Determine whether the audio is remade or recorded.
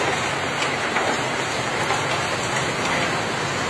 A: recorded